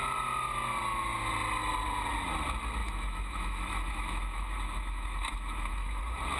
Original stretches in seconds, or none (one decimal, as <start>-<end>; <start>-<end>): 0.0-2.8; 6.0-6.4